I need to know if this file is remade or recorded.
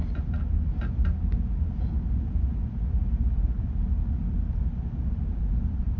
recorded